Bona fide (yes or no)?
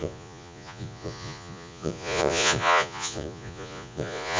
no